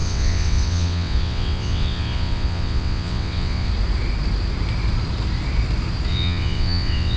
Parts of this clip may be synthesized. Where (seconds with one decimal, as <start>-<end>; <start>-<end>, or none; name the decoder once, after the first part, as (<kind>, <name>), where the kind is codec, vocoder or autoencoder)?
0.0-3.7 (vocoder, WaveNeXt); 6.1-7.2